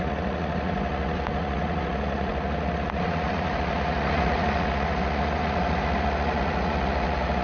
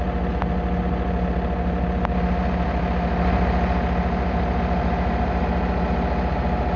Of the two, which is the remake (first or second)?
first